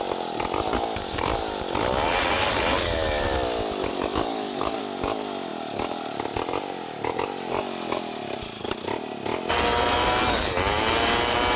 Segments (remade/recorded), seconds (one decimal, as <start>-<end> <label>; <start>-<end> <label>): 0.0-3.9 recorded; 3.9-4.8 remade; 4.8-11.6 recorded